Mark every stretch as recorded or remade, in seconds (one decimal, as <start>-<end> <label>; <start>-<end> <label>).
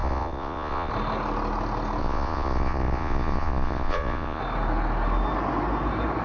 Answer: 0.0-0.9 remade; 0.9-2.0 recorded; 2.0-4.4 remade; 4.4-6.2 recorded